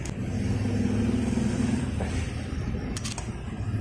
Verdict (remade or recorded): recorded